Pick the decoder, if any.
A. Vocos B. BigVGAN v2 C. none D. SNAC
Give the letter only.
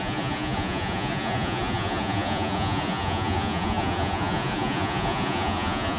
A